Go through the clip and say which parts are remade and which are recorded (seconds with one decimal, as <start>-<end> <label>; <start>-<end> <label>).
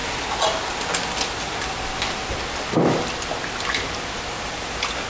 0.0-5.1 recorded